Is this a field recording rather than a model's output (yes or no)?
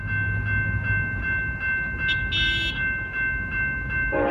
yes